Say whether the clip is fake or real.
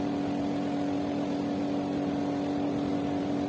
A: real